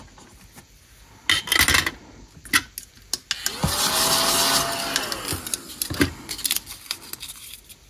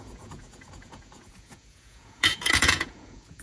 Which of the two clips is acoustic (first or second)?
first